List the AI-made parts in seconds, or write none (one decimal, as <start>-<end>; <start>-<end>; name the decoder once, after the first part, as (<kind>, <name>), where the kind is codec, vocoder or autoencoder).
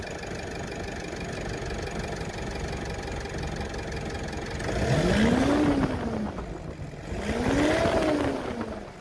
none